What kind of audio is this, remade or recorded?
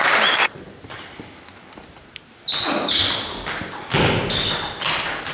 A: recorded